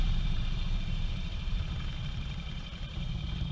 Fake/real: fake